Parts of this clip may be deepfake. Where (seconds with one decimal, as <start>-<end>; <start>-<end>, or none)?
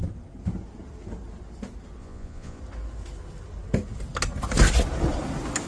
2.0-2.6